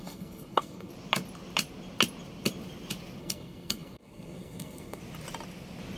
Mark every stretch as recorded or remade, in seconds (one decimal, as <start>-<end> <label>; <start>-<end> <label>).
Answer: 0.0-0.9 remade; 0.9-3.2 recorded; 3.2-5.0 remade; 5.0-6.0 recorded